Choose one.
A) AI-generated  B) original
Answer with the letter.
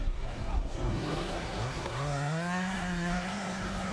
A